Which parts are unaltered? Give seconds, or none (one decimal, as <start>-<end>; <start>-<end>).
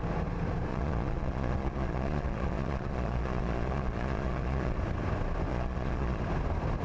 0.0-0.7; 4.8-5.5; 6.2-6.8